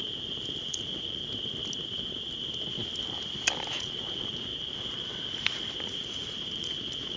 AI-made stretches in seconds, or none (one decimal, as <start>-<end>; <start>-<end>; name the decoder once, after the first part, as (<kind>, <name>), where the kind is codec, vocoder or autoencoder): 0.6-1.2 (vocoder, Vocos); 3.7-4.5; 5.8-7.2